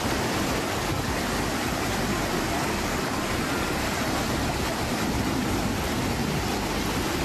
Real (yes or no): yes